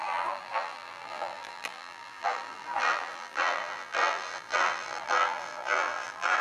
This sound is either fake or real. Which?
fake